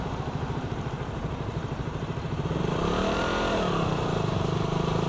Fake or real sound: fake